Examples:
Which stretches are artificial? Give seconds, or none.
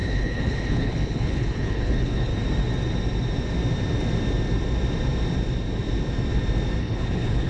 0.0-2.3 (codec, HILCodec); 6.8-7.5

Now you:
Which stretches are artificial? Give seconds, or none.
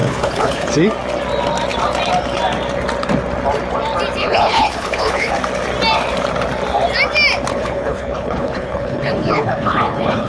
0.0-0.7 (codec, HILCodec); 4.2-5.3; 7.5-10.3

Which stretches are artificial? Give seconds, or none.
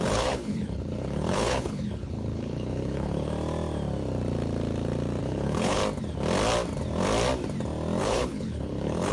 0.0-3.3 (codec, HILCodec); 5.2-5.8; 8.0-9.1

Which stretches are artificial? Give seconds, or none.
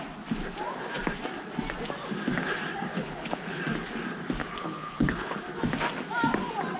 2.9-3.6 (codec, HILCodec); 4.4-5.4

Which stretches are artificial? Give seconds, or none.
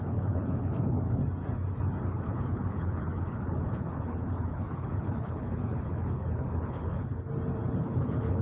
0.0-1.2 (codec, HILCodec); 2.1-7.1; 7.8-8.4